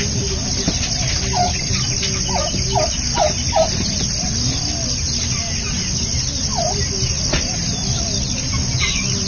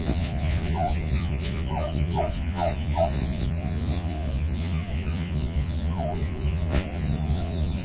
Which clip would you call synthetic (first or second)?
second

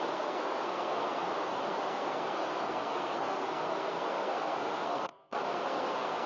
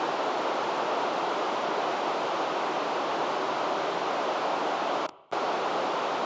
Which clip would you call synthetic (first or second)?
first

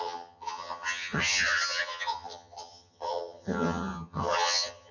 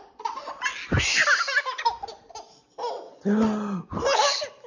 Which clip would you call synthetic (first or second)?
first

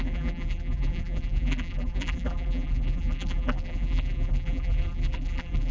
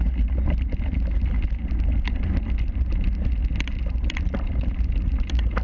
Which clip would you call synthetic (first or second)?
first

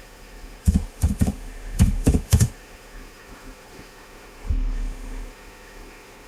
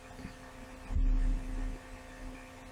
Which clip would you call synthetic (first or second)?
first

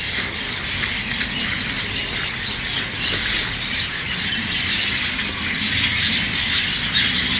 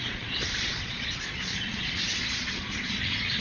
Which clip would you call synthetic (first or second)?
second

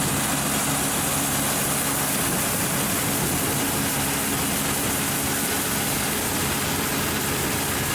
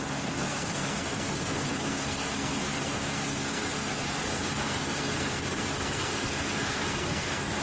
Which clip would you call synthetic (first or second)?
second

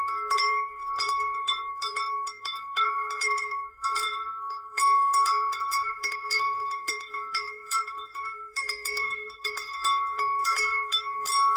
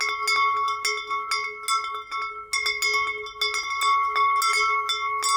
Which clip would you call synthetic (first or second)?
first